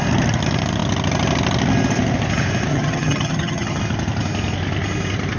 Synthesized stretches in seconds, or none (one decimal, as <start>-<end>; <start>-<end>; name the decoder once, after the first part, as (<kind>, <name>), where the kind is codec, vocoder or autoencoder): 2.7-3.8 (vocoder, HiFi-GAN)